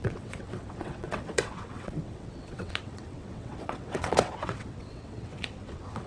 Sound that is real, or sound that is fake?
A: fake